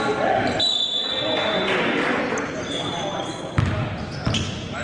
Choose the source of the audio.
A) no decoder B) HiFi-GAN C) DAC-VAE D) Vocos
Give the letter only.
A